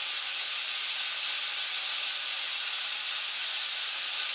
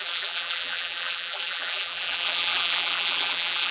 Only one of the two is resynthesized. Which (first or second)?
second